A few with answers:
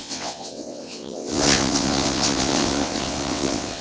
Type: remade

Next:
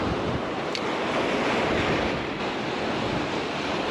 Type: recorded